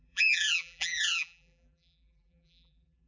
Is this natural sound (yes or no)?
no